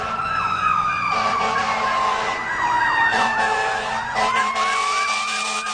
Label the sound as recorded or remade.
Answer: remade